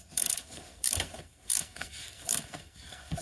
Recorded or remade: remade